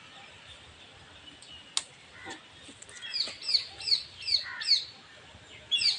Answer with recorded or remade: recorded